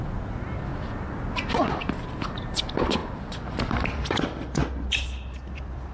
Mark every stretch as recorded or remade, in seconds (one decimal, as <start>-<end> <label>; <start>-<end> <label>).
0.0-0.7 remade; 0.7-1.8 recorded; 1.8-3.0 remade; 3.0-3.5 recorded; 3.5-4.6 remade; 4.6-5.5 recorded; 5.5-5.9 remade